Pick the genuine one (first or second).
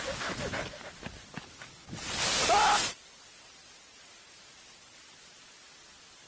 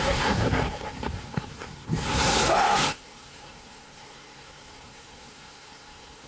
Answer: first